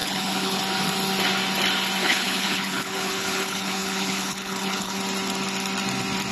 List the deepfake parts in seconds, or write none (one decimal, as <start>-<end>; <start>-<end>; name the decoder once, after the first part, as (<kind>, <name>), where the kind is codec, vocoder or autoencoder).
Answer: 0.0-0.6 (codec, HILCodec); 2.0-5.0

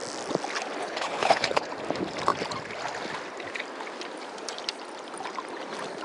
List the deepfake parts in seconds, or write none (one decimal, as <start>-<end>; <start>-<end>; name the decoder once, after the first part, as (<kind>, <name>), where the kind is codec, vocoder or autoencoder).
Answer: 0.8-1.7 (codec, HILCodec)

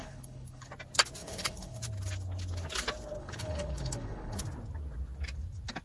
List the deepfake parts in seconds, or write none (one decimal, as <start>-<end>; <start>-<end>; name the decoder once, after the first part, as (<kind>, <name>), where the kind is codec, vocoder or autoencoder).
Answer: 0.0-0.7 (codec, HILCodec); 1.2-1.8; 3.2-4.4

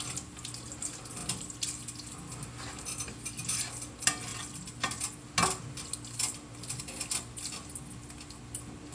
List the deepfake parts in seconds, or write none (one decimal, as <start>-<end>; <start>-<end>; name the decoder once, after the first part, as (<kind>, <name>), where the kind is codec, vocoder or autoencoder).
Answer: none